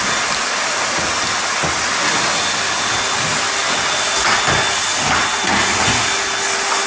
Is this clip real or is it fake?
real